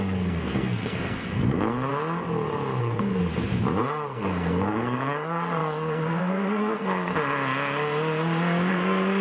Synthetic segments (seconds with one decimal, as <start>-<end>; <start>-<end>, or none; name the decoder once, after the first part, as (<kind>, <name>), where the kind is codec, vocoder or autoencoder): 0.0-1.9 (codec, SNAC); 2.8-3.2; 3.8-7.1; 8.7-9.2

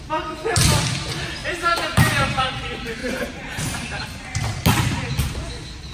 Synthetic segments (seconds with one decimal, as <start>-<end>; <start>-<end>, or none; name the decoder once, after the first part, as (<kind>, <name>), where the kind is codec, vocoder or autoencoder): 1.4-2.5 (vocoder, BigVGAN v2); 3.0-4.2

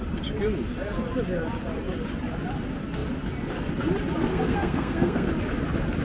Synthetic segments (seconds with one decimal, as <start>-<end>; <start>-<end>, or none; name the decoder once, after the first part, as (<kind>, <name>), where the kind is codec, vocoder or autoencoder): 4.3-5.3 (codec, SNAC)

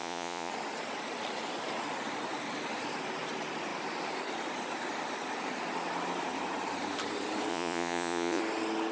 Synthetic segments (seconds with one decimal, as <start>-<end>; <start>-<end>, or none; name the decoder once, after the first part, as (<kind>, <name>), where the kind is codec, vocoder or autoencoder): 0.0-0.5 (vocoder, Vocos); 7.5-8.4

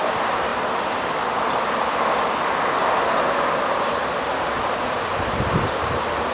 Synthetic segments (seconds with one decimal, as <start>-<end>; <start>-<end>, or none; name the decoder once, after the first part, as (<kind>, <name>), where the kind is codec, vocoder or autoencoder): none

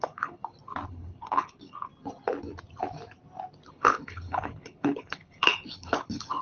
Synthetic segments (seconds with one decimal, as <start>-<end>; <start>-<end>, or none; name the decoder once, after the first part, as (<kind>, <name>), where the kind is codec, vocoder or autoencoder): 0.0-0.4 (codec, HILCodec); 0.9-1.9; 3.7-6.4

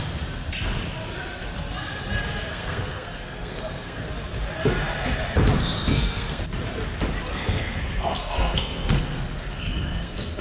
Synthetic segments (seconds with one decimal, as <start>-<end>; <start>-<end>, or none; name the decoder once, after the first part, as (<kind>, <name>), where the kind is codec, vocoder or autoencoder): 2.5-4.1 (codec, SNAC); 5.6-6.4; 7.3-10.4